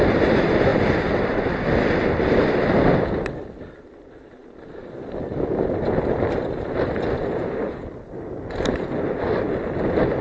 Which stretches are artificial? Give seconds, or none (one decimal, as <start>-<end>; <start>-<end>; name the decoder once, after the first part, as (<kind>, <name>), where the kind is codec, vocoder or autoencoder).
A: none